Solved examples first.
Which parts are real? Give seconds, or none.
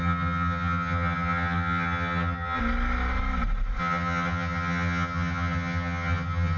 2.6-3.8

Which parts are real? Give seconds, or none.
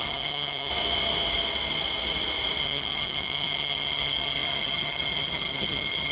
0.7-2.6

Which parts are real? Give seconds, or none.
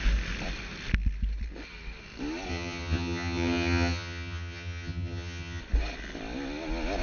0.0-2.5; 5.6-7.0